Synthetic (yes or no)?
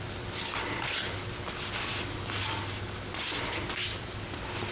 no